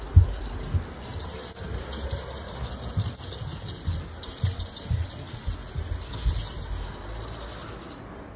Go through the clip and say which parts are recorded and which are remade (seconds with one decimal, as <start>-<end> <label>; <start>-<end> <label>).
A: 0.0-8.4 recorded